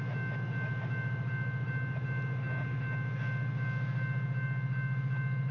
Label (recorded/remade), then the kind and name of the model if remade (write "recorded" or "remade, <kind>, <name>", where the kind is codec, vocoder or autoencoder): recorded